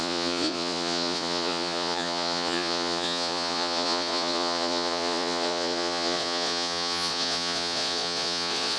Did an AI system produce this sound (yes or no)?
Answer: yes